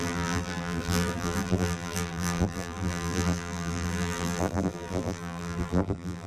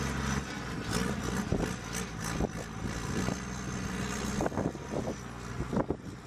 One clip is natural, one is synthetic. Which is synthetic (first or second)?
first